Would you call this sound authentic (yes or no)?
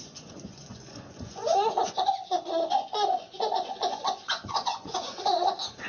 no